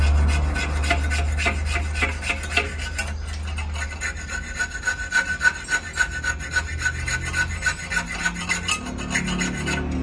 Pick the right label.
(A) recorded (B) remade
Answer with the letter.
A